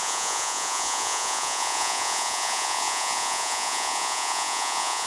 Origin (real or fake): fake